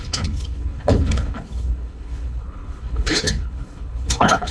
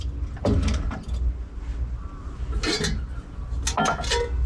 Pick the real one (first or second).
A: second